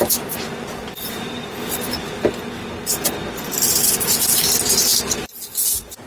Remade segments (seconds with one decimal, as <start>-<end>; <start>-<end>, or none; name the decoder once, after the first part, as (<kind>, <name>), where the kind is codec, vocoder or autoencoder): 0.0-2.6 (vocoder, BigVGAN v2); 3.5-6.1